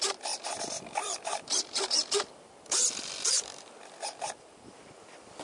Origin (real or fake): fake